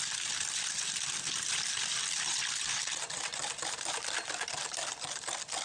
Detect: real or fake fake